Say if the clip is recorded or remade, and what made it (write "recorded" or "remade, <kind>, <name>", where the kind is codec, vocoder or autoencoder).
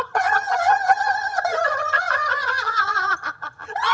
remade, vocoder, HiFi-GAN